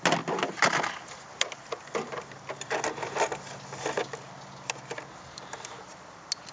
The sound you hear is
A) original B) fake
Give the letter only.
A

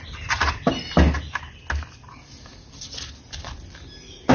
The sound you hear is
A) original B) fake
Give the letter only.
A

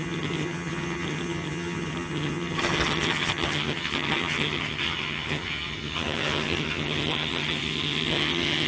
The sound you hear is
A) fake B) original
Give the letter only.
A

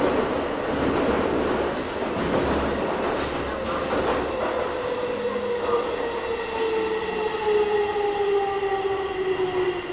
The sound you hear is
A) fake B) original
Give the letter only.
B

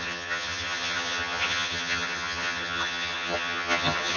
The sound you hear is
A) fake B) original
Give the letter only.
A